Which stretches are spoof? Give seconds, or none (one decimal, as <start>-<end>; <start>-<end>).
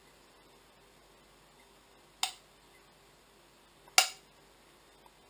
none